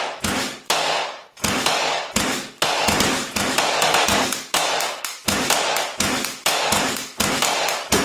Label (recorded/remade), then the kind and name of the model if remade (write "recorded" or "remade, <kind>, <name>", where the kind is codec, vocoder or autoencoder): remade, codec, DAC